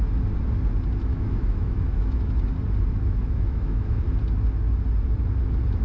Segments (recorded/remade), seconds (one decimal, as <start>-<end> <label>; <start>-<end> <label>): 0.0-1.1 recorded; 1.1-2.5 remade; 2.5-3.2 recorded; 3.2-4.0 remade; 4.0-5.8 recorded